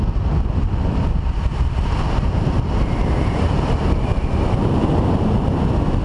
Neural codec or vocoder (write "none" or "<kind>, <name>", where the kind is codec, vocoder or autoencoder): none